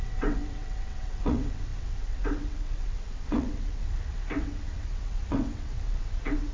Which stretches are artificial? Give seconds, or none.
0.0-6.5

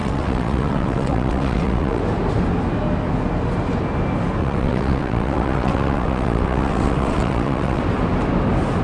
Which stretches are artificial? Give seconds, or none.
0.0-2.0; 4.4-7.8

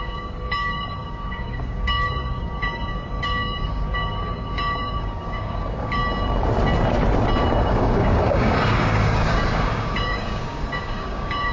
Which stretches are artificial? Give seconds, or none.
0.0-6.0; 7.4-11.5

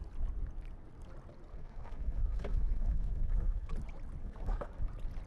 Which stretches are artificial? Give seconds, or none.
1.5-3.7; 4.2-4.8

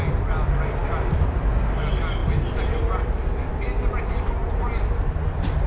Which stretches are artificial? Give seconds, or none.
none